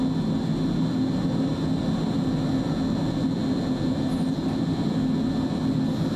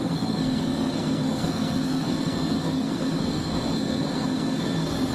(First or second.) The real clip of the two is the first